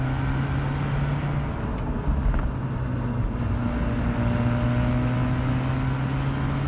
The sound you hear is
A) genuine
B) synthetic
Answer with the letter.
A